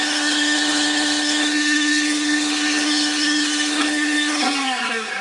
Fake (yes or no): yes